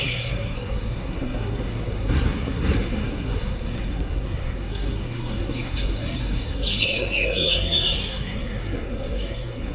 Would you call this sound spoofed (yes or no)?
yes